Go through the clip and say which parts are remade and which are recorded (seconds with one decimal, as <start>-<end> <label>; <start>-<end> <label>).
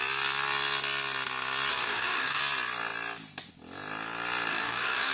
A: 0.0-1.7 recorded; 1.7-2.4 remade; 2.4-4.5 recorded; 4.5-5.1 remade